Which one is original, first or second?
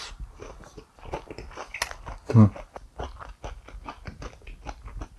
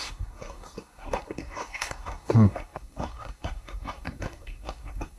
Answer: first